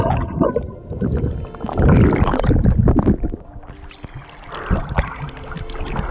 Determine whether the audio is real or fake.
real